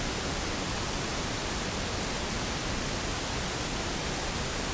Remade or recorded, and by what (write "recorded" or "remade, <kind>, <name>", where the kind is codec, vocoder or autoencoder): recorded